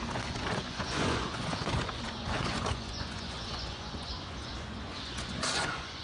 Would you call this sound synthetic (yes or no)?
yes